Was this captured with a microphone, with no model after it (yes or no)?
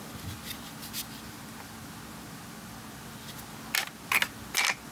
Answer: yes